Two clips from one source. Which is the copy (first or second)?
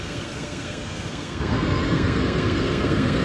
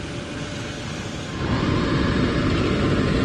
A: first